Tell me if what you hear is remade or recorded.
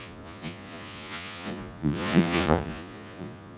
remade